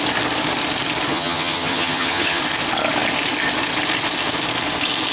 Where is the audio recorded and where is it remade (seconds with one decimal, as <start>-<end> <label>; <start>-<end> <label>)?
0.0-1.1 recorded; 1.1-2.4 remade; 2.4-5.1 recorded